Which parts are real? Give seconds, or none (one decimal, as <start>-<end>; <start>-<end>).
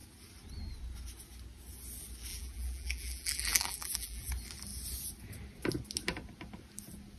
0.0-2.3; 4.3-7.2